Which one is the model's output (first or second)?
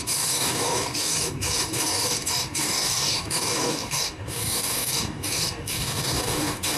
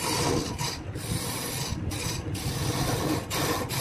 first